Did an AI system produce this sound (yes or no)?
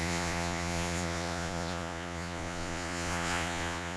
yes